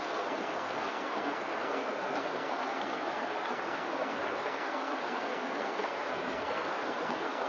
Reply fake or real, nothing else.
fake